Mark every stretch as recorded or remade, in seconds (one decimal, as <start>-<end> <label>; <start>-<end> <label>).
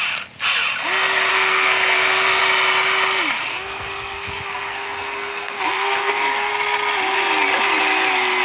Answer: 0.0-1.3 recorded; 1.3-2.4 remade; 2.4-3.5 recorded; 3.5-6.5 remade; 6.5-8.4 recorded